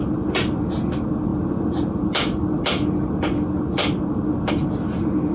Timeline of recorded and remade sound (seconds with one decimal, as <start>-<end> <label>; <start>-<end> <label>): 0.0-5.3 recorded